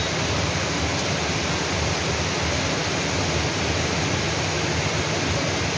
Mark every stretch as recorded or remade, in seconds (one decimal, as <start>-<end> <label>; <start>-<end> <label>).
0.0-5.8 recorded